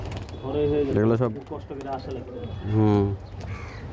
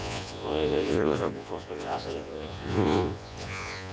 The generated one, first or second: second